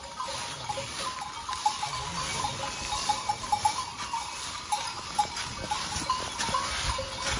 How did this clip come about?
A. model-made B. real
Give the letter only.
A